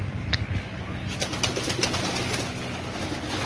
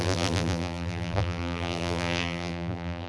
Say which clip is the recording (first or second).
first